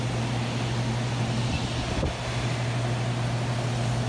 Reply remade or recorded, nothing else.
recorded